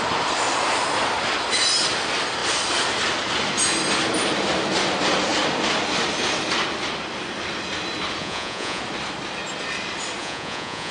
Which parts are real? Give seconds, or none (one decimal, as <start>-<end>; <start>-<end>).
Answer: 0.0-8.2; 8.8-10.2